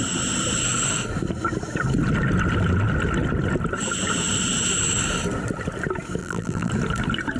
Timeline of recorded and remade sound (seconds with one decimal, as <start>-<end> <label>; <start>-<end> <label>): 0.0-6.2 recorded; 6.2-6.7 remade; 6.7-7.4 recorded